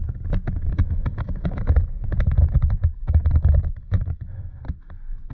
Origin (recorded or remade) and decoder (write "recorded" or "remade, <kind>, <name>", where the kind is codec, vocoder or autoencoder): remade, autoencoder, DAC-VAE